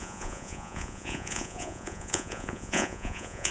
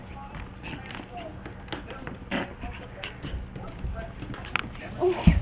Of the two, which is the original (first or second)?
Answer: second